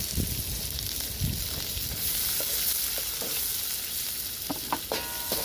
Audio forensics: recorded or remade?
recorded